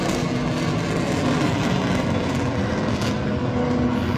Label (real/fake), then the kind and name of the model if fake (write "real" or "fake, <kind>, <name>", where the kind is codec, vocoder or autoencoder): real